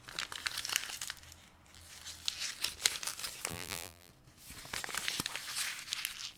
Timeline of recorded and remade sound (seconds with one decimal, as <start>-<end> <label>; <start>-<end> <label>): 0.0-3.5 recorded; 3.5-4.1 remade; 4.1-6.4 recorded

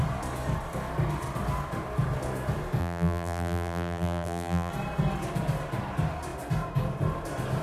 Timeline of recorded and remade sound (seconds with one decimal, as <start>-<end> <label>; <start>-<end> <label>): 0.0-2.8 recorded; 2.8-4.7 remade; 4.7-7.6 recorded